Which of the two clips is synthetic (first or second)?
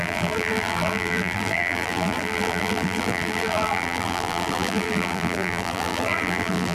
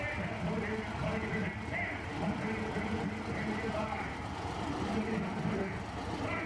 first